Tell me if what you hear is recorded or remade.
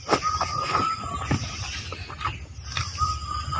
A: recorded